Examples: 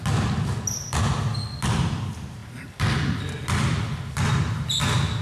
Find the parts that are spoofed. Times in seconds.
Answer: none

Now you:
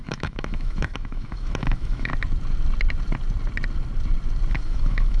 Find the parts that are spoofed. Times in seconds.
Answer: 0.0-2.1 (autoencoder, DAC-VAE); 4.5-5.2

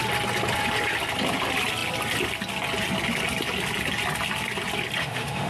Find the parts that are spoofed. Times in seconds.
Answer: 5.0-5.5 (autoencoder, DAC-VAE)

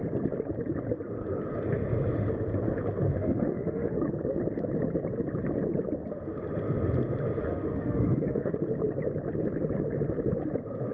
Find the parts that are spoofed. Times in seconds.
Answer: 3.1-3.9 (autoencoder, DAC-VAE); 7.4-8.5

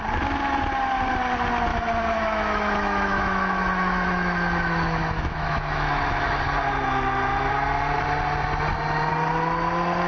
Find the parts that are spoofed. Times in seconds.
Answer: 1.7-6.4 (autoencoder, DAC-VAE)

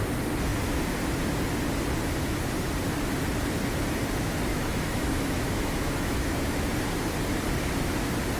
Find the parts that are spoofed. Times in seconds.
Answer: 4.5-6.7 (autoencoder, DAC-VAE)